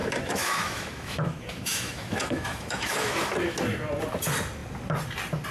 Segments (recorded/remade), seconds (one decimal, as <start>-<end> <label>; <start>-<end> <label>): 0.0-3.3 remade; 3.3-5.5 recorded